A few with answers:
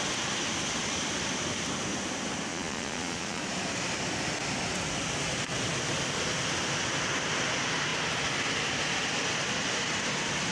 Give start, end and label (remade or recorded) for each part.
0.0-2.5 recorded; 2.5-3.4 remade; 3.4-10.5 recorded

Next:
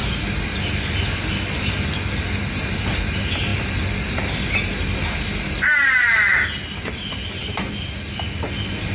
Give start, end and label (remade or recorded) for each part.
0.0-8.9 recorded

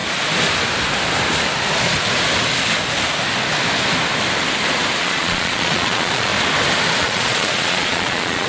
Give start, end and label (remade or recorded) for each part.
0.0-5.0 recorded; 5.0-6.3 remade; 6.3-7.0 recorded; 7.0-8.5 remade

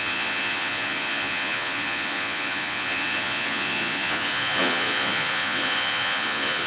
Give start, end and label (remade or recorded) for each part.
0.0-6.7 remade

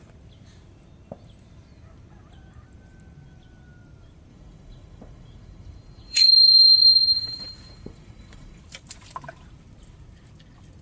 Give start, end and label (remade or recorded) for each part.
0.0-4.3 recorded; 4.3-8.6 remade; 8.6-10.8 recorded

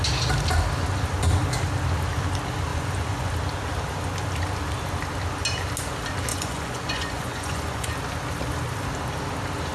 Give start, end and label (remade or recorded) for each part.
0.0-2.7 recorded; 2.7-3.3 remade; 3.3-6.3 recorded; 6.3-7.9 remade; 7.9-9.7 recorded

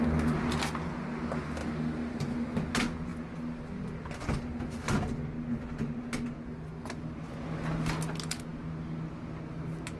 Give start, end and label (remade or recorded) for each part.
0.0-10.0 recorded